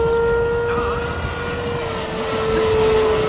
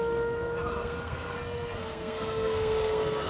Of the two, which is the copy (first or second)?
second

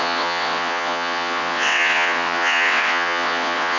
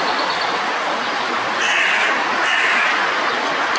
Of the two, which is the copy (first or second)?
first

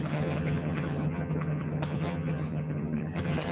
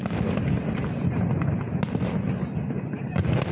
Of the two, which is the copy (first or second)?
first